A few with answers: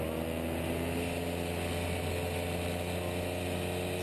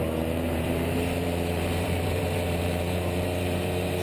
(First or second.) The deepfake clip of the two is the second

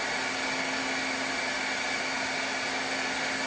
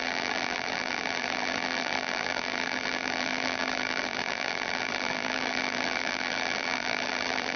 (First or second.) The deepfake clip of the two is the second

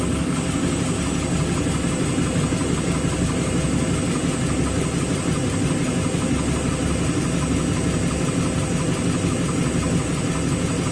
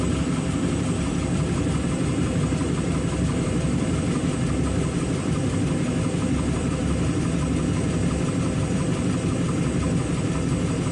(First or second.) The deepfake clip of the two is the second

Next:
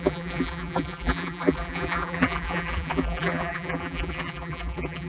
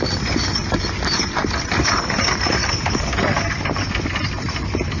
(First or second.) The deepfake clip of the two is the first